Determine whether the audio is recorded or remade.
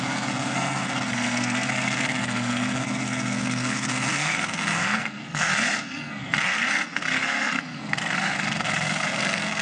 remade